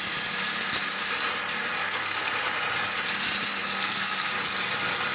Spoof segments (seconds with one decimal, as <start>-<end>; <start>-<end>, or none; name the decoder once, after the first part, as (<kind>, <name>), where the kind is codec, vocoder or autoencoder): 1.8-2.3 (codec, SNAC); 3.5-4.3

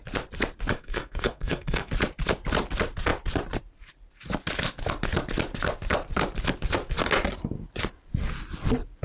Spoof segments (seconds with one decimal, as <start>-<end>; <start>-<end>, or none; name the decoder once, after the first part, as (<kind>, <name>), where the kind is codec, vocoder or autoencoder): 0.7-1.9 (codec, SNAC)

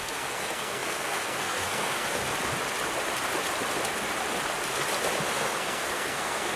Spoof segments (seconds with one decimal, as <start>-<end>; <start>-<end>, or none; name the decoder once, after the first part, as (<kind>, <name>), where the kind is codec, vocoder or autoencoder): 0.0-2.2 (codec, SNAC); 5.3-6.6

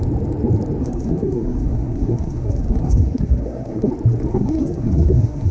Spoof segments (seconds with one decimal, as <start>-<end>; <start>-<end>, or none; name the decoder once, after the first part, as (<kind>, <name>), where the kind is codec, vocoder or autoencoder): 0.8-3.9 (codec, SNAC); 4.3-5.5

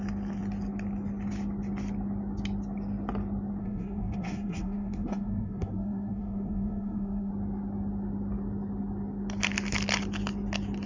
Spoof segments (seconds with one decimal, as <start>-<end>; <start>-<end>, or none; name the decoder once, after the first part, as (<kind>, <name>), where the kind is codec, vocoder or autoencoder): 3.6-7.3 (codec, SNAC)